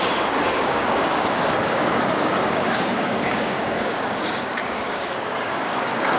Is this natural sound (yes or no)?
no